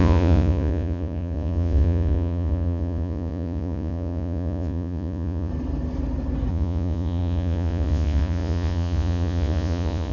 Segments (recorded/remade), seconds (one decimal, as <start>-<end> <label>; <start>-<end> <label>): 0.0-5.5 remade; 5.5-6.5 recorded; 6.5-10.1 remade